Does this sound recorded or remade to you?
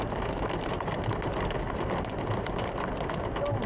recorded